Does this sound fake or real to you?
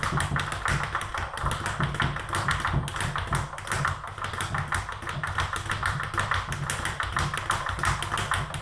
real